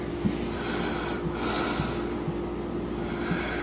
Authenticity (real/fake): real